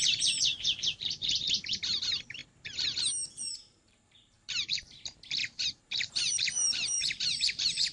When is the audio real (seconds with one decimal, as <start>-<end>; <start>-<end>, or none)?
2.4-3.4